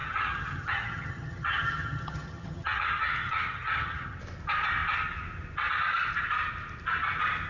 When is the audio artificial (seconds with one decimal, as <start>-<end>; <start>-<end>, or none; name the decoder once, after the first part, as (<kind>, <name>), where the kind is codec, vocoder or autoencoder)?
0.0-4.2 (vocoder, HiFi-GAN)